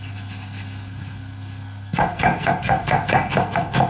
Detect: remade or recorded remade